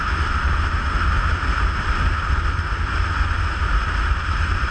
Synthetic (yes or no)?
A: no